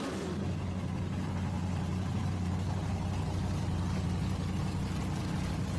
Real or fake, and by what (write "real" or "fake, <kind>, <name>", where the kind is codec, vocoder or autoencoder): real